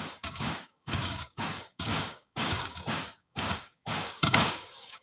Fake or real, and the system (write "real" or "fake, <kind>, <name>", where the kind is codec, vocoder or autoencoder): fake, codec, DAC